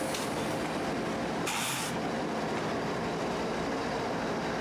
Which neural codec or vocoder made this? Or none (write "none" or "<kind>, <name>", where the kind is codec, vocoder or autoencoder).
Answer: none